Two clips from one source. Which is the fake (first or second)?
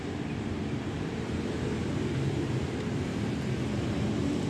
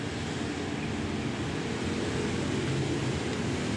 first